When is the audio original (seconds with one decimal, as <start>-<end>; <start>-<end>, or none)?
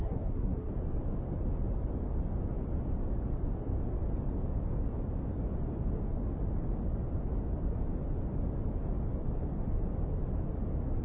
0.7-11.0